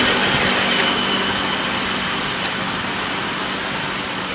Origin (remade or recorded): recorded